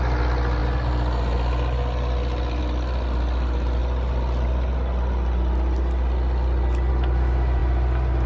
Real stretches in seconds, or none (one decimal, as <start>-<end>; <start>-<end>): 0.0-8.3